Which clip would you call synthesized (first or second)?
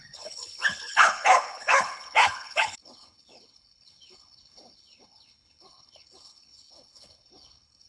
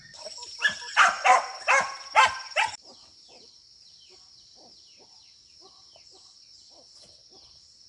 first